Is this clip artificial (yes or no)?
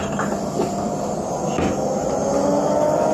no